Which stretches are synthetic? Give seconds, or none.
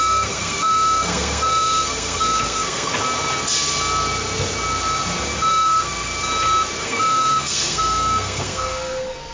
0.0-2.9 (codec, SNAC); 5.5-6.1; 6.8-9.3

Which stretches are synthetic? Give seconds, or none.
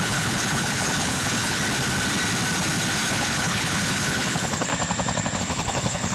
0.0-1.6 (codec, HILCodec); 3.1-4.7; 5.4-6.1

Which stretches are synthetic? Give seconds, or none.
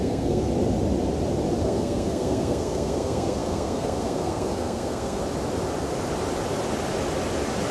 0.0-0.5 (codec, SNAC); 1.6-5.2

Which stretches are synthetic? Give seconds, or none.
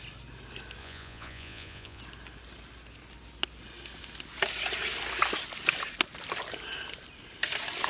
0.8-2.0 (vocoder, Vocos)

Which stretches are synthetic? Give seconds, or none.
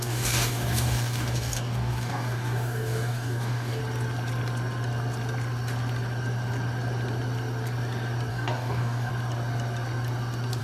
0.0-3.8 (codec, DAC); 8.3-9.1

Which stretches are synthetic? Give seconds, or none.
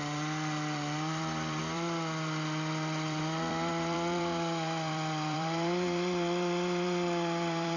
0.0-7.8 (vocoder, BigVGAN v2)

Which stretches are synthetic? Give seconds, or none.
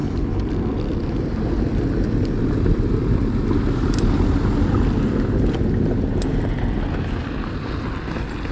none